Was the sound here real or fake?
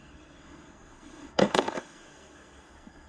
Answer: fake